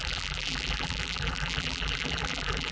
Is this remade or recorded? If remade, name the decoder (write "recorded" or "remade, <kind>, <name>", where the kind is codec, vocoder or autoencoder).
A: remade, vocoder, BigVGAN v2